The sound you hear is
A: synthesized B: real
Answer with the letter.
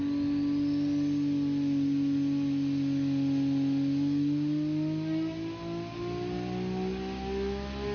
B